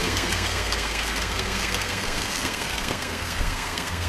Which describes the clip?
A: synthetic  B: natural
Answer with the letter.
A